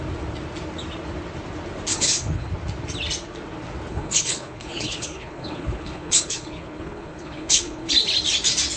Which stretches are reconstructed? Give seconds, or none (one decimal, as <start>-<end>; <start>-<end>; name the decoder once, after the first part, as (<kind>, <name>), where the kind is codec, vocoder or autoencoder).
1.9-2.5 (codec, HILCodec); 3.9-7.9